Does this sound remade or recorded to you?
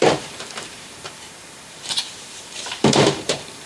remade